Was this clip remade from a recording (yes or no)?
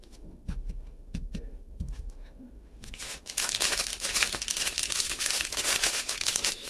yes